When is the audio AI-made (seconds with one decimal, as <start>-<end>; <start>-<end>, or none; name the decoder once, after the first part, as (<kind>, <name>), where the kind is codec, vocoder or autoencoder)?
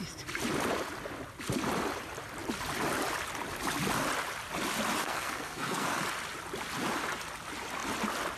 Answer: 5.0-6.0 (codec, SNAC)